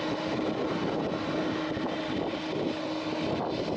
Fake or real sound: real